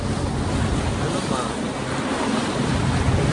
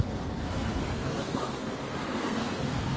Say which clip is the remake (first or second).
second